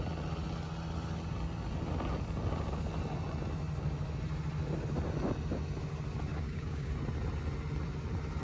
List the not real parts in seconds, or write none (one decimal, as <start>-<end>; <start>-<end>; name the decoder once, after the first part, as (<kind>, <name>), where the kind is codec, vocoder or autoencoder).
6.3-6.9 (codec, DAC)